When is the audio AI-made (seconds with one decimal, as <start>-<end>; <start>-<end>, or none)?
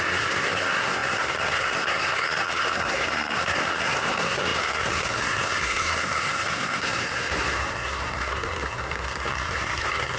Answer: 0.0-10.2